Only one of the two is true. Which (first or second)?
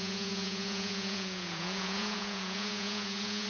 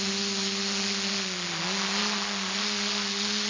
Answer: second